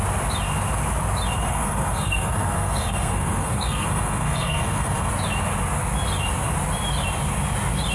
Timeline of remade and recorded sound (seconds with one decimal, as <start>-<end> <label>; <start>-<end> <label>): 0.0-1.5 recorded; 1.5-5.1 remade; 5.1-7.9 recorded